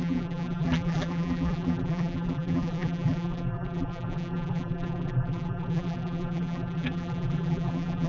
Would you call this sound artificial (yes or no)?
yes